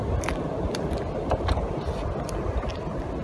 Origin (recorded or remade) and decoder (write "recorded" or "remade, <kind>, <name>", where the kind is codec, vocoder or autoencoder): recorded